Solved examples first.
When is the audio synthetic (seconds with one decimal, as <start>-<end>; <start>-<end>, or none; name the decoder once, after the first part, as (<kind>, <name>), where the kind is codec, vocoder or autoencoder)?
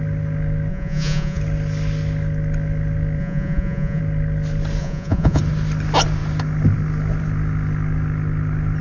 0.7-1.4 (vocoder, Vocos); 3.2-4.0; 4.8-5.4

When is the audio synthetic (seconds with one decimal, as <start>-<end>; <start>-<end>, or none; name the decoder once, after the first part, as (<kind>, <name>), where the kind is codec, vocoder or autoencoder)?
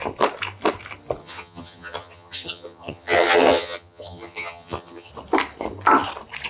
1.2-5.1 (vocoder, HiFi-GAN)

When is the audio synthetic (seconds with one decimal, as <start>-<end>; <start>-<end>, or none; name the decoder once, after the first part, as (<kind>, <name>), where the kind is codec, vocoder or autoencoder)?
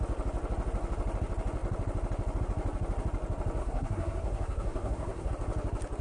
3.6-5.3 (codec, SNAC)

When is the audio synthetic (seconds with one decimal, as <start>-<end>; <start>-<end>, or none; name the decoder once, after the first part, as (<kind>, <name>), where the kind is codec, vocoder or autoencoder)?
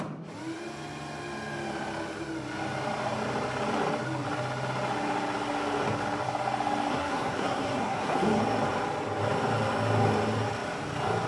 6.9-8.4 (codec, SNAC)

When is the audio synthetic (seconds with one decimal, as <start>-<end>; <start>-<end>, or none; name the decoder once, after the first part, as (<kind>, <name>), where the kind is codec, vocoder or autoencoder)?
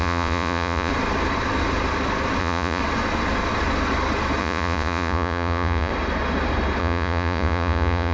0.0-0.9 (vocoder, Vocos); 2.4-2.8; 4.4-5.9; 6.8-8.1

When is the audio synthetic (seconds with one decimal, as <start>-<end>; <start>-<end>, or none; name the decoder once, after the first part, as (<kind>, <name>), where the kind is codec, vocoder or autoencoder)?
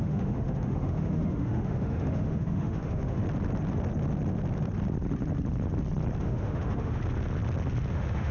0.0-3.2 (autoencoder, DAC-VAE); 6.2-7.0; 7.9-8.3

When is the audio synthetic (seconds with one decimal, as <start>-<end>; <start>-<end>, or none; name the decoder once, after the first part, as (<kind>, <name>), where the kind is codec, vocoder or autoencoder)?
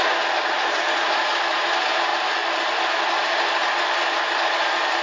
3.6-4.5 (vocoder, BigVGAN v2)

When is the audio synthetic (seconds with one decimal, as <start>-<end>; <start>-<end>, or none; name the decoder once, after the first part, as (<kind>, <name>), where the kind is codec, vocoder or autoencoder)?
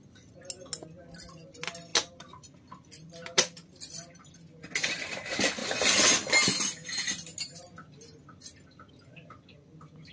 none